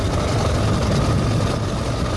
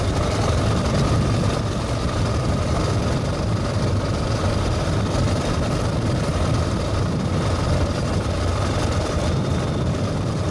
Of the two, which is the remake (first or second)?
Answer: second